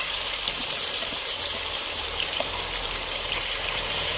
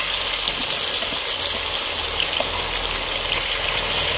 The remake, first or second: first